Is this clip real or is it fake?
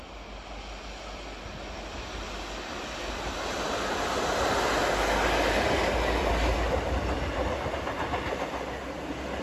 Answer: real